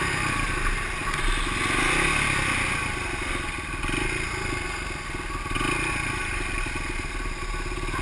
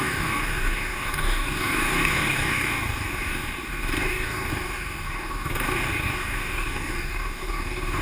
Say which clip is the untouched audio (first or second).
first